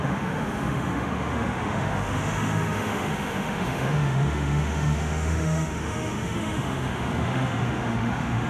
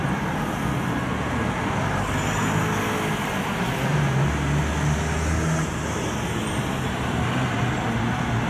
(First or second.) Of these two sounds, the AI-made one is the first